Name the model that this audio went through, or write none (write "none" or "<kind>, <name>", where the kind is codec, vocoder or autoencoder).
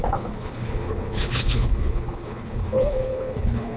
codec, HILCodec